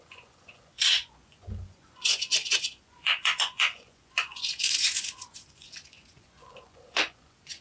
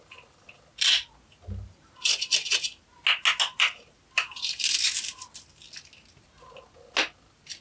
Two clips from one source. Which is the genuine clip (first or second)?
second